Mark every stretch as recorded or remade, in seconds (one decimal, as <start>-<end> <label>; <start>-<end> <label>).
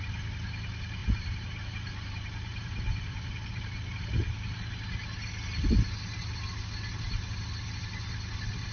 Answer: 0.0-1.0 recorded; 1.0-4.0 remade; 4.0-8.7 recorded